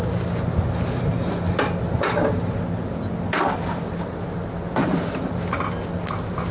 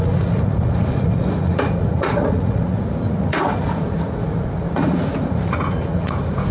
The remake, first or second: second